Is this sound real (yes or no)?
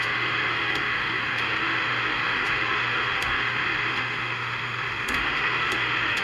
no